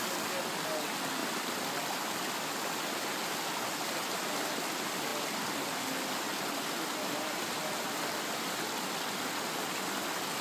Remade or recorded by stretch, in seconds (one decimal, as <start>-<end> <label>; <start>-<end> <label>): 0.0-10.4 recorded